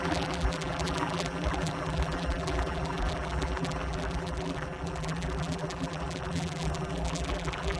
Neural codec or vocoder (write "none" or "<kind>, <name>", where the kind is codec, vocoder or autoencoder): vocoder, BigVGAN v2